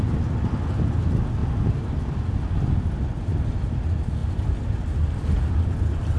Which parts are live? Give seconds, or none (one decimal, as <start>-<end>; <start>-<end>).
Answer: 0.0-6.2